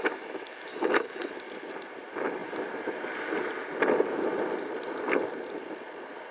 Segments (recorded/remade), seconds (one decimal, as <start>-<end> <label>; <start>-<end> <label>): 0.0-0.7 recorded; 0.7-1.3 remade; 1.3-6.3 recorded